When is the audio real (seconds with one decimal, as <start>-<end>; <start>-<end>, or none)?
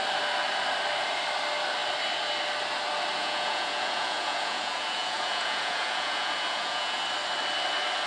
0.0-3.2; 7.0-8.1